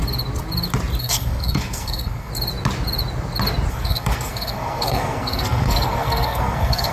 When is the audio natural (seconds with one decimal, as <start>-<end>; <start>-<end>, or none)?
0.0-1.0; 2.3-3.7